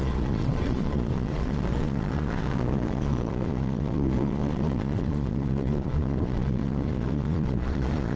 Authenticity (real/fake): fake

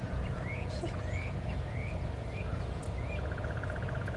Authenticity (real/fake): fake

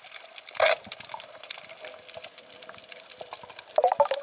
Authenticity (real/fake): real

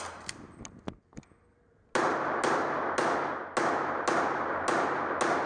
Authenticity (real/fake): real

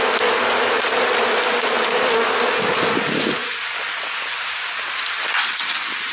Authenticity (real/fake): real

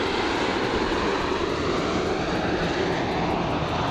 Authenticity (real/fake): real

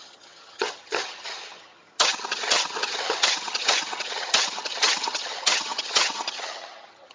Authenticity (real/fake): fake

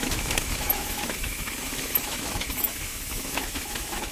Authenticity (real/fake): fake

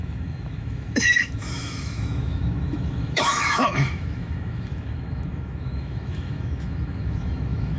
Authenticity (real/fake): fake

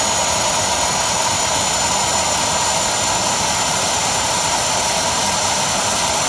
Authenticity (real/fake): real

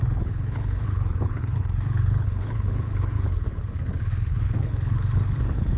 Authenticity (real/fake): fake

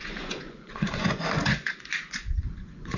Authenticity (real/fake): fake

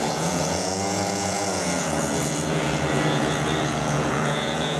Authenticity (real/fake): fake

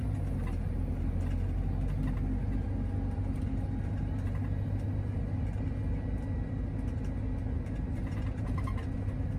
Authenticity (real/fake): real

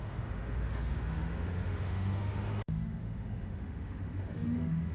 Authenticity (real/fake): fake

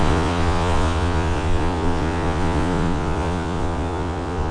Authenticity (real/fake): fake